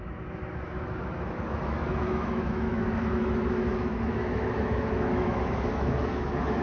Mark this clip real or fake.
fake